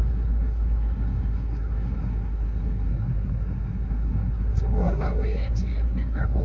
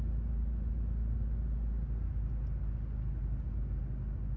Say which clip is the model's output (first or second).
first